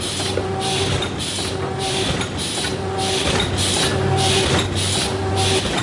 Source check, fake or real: real